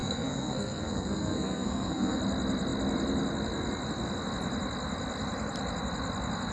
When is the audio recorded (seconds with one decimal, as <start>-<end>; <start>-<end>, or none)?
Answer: 2.2-6.5